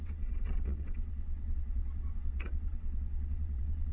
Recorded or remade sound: remade